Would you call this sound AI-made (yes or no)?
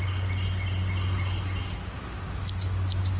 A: no